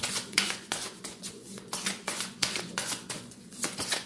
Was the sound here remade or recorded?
remade